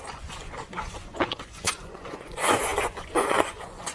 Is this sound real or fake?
fake